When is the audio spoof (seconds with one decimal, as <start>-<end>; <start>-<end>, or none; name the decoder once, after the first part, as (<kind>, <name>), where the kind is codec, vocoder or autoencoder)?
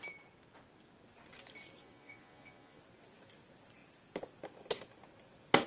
1.8-2.8 (vocoder, Vocos)